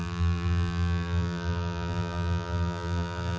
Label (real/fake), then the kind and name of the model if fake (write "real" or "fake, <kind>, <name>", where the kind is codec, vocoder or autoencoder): fake, vocoder, BigVGAN v2